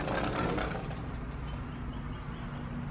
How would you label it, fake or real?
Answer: real